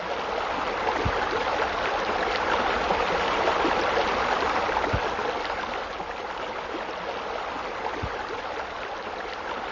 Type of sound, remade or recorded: recorded